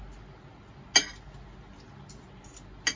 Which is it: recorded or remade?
recorded